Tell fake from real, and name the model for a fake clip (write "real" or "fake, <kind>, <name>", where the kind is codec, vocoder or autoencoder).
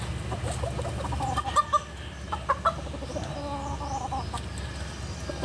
real